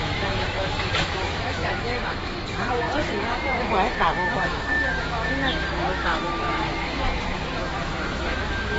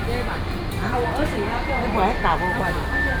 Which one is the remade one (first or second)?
first